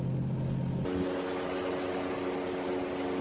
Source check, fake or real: real